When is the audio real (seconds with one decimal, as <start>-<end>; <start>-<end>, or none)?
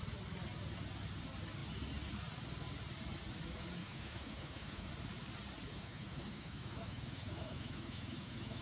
0.0-3.8; 4.9-5.7